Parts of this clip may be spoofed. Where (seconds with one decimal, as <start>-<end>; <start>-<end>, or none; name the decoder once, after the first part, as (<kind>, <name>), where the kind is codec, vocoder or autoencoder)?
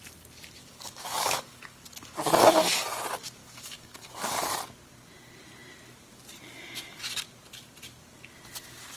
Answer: 0.6-1.8 (codec, DAC); 3.4-4.3